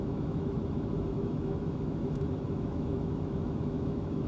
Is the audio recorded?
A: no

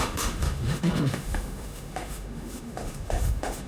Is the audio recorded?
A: no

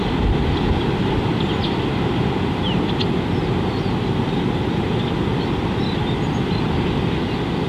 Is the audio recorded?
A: yes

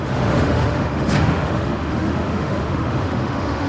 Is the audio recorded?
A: no